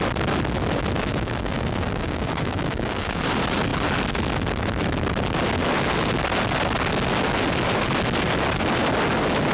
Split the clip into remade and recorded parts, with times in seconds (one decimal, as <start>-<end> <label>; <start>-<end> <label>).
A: 0.0-1.1 recorded; 1.1-3.2 remade; 3.2-9.5 recorded